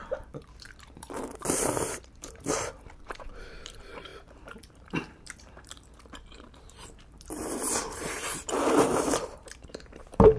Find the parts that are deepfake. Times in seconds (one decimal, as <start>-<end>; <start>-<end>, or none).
0.0-10.4